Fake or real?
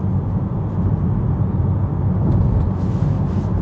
real